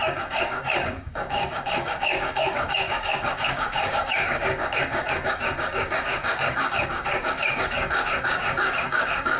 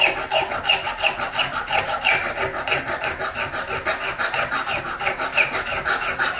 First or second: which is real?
second